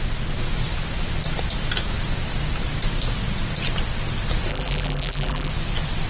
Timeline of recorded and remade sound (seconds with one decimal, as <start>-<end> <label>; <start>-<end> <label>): 0.0-4.5 recorded; 4.5-5.5 remade; 5.5-6.1 recorded